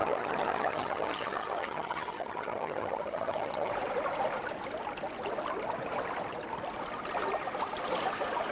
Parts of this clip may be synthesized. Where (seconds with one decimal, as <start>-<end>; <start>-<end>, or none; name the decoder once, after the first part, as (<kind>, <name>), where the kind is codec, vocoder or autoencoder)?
0.0-3.7 (vocoder, HiFi-GAN)